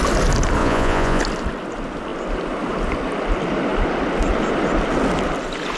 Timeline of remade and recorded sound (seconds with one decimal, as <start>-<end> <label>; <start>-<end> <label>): 0.0-0.6 recorded; 0.6-1.2 remade; 1.2-5.8 recorded